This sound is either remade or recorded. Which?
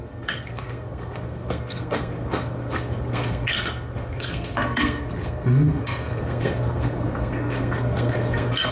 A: remade